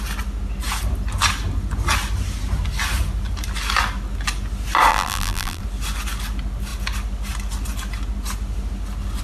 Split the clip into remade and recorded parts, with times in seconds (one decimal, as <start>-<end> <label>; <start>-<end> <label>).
0.0-4.9 recorded; 4.9-5.6 remade; 5.6-9.2 recorded